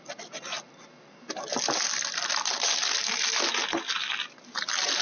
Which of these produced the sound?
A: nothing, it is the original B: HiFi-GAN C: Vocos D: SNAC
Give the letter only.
A